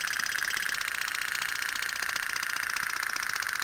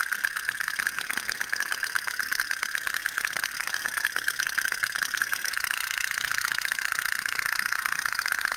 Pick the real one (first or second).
first